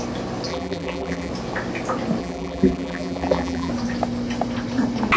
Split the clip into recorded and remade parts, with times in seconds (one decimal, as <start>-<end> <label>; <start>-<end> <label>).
0.0-0.5 recorded; 0.5-1.3 remade; 1.3-2.2 recorded; 2.2-3.7 remade; 3.7-5.2 recorded